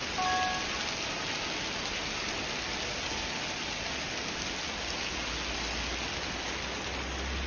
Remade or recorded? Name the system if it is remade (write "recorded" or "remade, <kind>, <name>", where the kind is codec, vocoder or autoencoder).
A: recorded